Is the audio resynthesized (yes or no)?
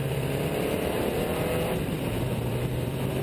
yes